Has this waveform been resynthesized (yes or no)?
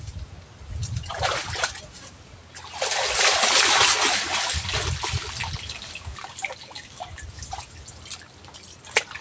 no